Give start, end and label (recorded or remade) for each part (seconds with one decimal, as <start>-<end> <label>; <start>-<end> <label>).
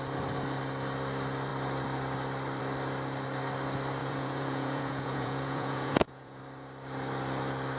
0.0-4.0 recorded; 4.0-6.4 remade; 6.4-7.8 recorded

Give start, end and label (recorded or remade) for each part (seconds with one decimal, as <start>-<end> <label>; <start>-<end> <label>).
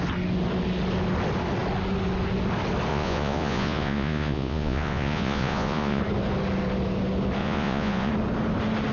0.0-2.9 recorded; 2.9-6.0 remade; 6.0-7.4 recorded; 7.4-8.1 remade; 8.1-8.9 recorded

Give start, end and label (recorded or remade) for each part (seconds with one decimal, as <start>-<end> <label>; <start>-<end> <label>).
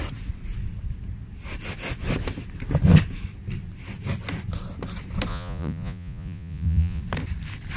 0.0-5.3 recorded; 5.3-7.0 remade; 7.0-7.8 recorded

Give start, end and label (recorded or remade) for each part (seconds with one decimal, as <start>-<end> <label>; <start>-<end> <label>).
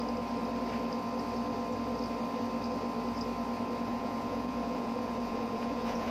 0.0-3.9 recorded; 3.9-6.1 remade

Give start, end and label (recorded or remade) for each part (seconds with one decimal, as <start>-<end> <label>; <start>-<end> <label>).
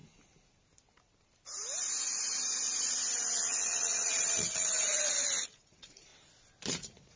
0.0-3.2 recorded; 3.2-6.1 remade; 6.1-6.7 recorded; 6.7-7.2 remade